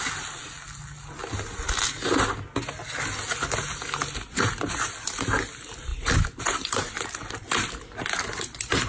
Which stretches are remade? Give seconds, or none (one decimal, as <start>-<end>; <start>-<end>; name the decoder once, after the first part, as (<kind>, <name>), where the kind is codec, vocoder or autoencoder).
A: none